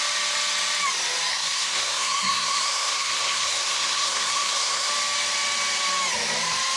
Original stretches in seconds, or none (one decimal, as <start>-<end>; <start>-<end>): 0.0-1.3; 4.9-6.8